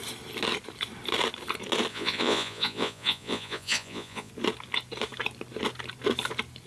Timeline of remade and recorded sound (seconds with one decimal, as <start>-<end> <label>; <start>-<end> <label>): 0.0-1.9 recorded; 1.9-4.3 remade; 4.3-6.7 recorded